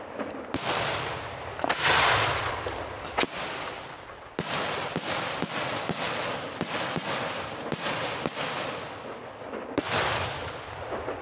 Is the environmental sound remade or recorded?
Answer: recorded